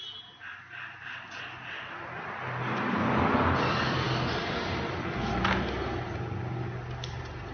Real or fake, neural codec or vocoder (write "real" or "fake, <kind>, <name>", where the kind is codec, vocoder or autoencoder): real